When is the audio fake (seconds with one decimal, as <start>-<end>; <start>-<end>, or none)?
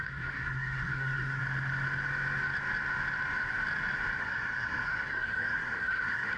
0.0-1.4; 4.2-6.4